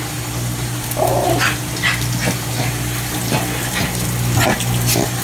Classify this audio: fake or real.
real